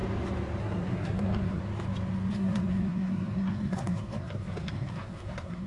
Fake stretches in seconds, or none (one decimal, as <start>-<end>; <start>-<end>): 0.6-1.6; 2.3-5.7